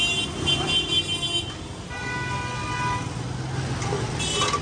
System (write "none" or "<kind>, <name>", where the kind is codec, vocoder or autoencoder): none